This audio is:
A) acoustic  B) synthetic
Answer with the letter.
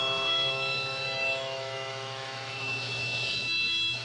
B